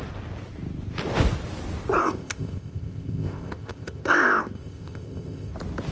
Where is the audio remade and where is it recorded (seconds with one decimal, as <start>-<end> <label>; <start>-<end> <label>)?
0.0-2.0 recorded; 2.0-5.5 remade; 5.5-5.9 recorded